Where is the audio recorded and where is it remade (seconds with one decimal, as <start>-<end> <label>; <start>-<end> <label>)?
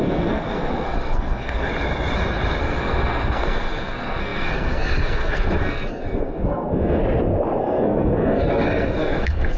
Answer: 0.0-1.7 remade; 1.7-2.6 recorded; 2.6-7.0 remade; 7.0-7.6 recorded; 7.6-9.6 remade